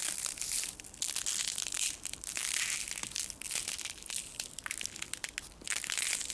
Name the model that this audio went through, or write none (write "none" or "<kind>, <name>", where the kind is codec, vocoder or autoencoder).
none